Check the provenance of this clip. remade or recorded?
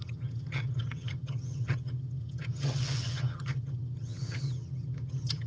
remade